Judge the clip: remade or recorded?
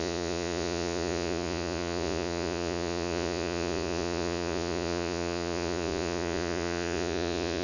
remade